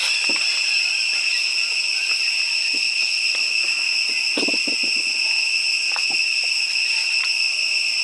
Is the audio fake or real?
real